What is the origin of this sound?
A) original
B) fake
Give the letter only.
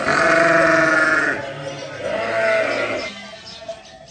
A